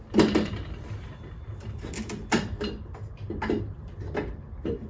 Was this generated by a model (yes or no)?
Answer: yes